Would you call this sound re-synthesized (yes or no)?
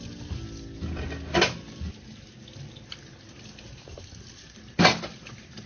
no